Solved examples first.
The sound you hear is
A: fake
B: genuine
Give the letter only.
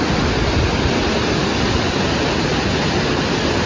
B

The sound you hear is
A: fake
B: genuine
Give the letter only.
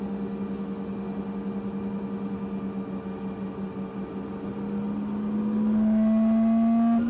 B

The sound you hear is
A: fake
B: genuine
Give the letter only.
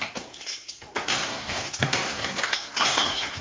A